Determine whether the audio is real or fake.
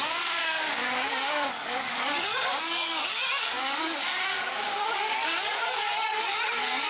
fake